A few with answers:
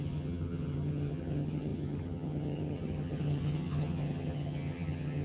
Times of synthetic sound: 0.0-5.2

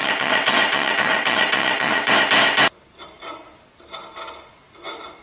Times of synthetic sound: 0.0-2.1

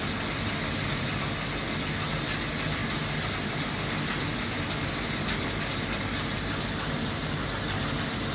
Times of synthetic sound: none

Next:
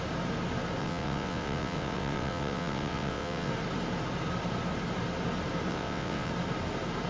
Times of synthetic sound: 0.8-3.5; 5.7-6.3

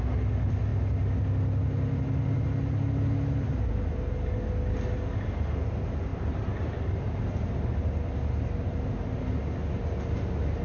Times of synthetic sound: 6.1-7.2

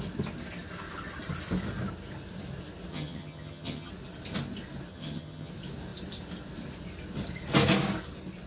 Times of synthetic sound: 2.9-3.9; 4.9-5.5

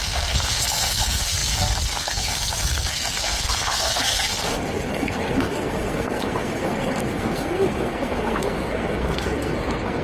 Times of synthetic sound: 0.0-10.0

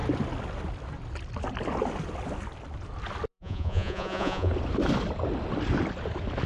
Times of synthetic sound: 3.3-4.5